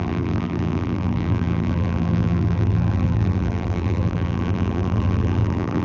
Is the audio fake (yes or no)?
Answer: yes